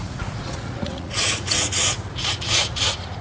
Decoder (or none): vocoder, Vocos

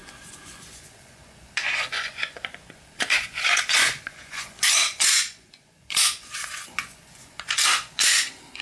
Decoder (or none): vocoder, Vocos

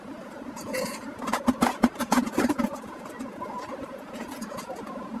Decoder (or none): vocoder, Vocos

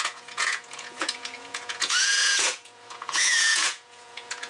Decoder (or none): vocoder, Vocos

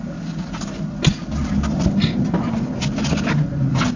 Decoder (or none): none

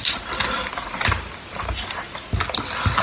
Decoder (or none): none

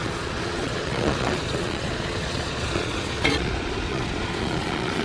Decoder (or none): vocoder, Vocos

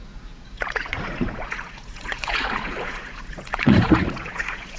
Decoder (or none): vocoder, Vocos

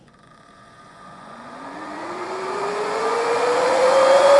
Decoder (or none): vocoder, Vocos